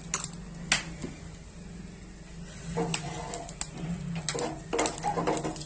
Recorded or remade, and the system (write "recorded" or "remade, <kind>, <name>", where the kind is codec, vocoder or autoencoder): recorded